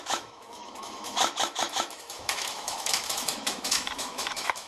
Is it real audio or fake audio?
fake